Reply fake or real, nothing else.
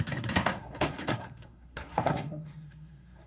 fake